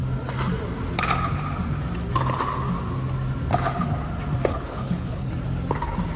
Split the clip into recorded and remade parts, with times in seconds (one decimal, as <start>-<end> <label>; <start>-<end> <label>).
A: 0.0-4.5 recorded; 4.5-5.3 remade; 5.3-6.2 recorded